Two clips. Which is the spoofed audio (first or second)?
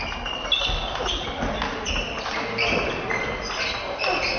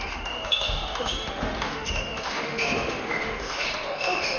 second